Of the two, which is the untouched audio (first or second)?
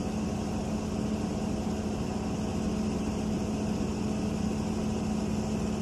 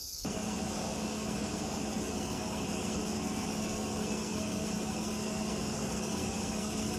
first